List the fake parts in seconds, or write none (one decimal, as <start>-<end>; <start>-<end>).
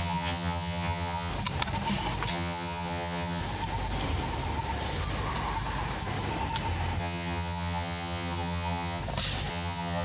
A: 0.0-1.3; 2.3-3.4; 7.0-9.0; 9.5-10.0